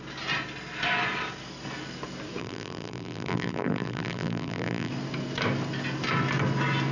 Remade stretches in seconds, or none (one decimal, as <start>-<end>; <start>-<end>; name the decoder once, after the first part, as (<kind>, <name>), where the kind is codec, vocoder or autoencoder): 2.4-4.9 (vocoder, BigVGAN v2)